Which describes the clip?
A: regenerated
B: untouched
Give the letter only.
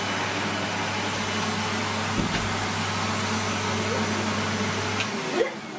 B